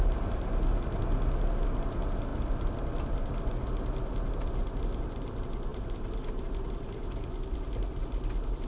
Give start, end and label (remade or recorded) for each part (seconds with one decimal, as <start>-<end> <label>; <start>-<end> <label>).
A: 0.0-5.7 recorded; 5.7-6.7 remade; 6.7-8.7 recorded